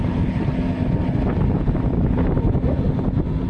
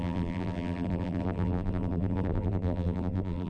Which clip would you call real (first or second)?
first